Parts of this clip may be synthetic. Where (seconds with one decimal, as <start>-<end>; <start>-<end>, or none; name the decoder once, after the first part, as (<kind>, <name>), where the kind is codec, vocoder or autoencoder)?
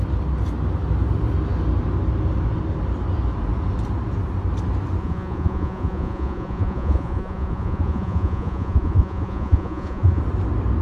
5.0-10.2 (vocoder, Vocos)